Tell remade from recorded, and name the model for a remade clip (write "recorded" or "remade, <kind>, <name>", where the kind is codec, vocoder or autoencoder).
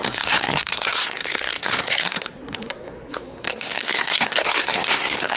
remade, codec, SNAC